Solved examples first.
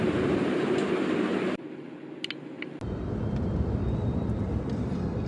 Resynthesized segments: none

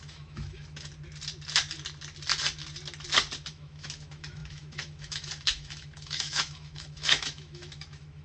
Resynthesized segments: 0.0-0.9 (autoencoder, DAC-VAE); 3.5-8.2

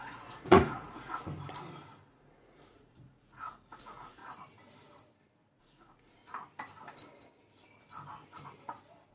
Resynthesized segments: 0.0-1.2 (vocoder, Vocos); 2.1-4.2; 5.6-6.2

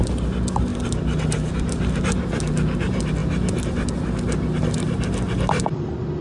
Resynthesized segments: none

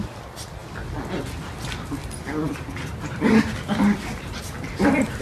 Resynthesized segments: 2.0-5.2 (vocoder, BigVGAN v2)

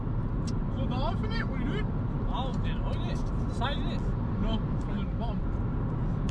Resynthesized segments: none

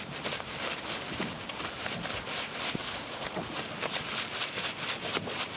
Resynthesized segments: 2.8-3.6 (vocoder, Vocos)

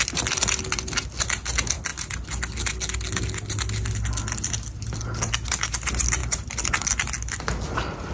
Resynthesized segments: none